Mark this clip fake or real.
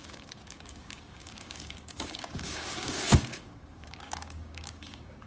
fake